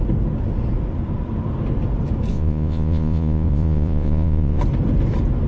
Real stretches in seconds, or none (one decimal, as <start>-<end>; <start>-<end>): 0.0-2.3; 4.6-5.5

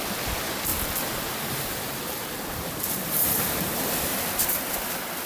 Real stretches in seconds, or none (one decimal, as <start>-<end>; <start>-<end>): 0.0-0.7; 3.9-5.3

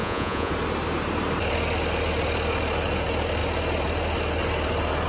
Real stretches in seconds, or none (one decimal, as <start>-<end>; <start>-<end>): 0.5-5.1

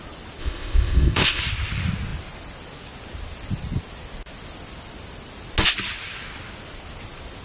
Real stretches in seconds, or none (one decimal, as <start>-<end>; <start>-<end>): 0.0-0.4; 1.4-7.4

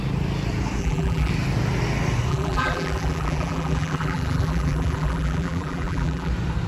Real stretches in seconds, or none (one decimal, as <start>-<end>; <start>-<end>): 0.0-0.8; 1.3-2.3; 6.3-6.7